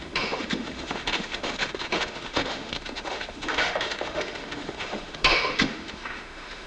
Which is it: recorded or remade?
remade